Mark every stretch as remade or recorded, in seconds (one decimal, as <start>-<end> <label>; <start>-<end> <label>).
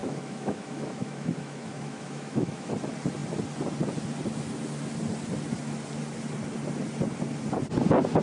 0.0-2.7 remade; 2.7-8.2 recorded